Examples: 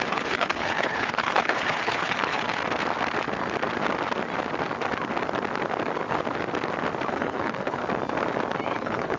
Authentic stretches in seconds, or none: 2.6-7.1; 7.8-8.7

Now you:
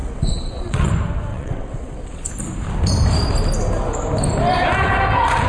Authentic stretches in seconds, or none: 0.9-1.3; 2.3-5.5

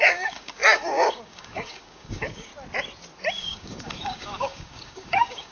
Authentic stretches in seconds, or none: 2.5-3.3

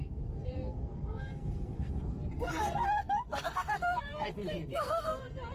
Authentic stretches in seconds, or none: none